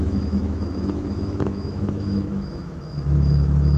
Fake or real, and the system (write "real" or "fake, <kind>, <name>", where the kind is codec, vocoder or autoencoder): fake, autoencoder, DAC-VAE